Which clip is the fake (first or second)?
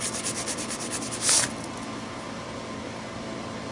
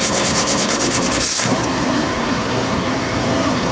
second